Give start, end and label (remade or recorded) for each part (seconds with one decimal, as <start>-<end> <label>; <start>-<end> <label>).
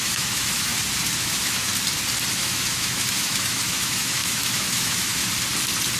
0.0-0.7 remade; 0.7-1.2 recorded; 1.2-1.7 remade; 1.7-2.3 recorded; 2.3-5.2 remade; 5.2-6.0 recorded